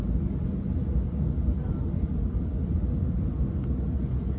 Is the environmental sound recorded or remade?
recorded